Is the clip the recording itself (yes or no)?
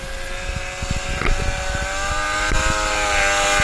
yes